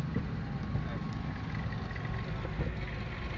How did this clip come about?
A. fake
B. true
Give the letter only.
B